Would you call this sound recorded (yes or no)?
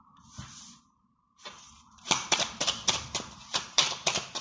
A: no